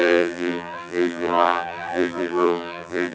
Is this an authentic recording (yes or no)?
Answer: no